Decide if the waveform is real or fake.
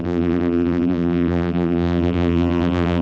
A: fake